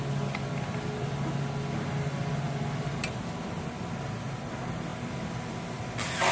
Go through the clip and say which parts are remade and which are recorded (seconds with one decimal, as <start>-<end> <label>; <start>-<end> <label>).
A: 0.0-6.3 recorded